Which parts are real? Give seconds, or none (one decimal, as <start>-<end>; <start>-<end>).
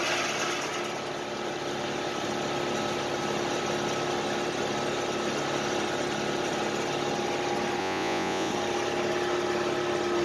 0.0-7.8; 8.5-10.2